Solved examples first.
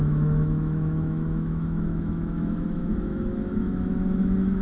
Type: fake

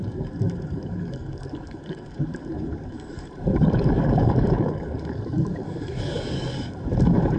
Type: fake